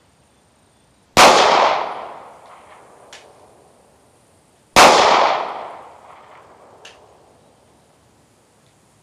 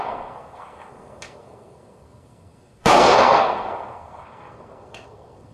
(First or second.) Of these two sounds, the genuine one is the first